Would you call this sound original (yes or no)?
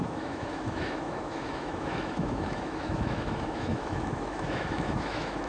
no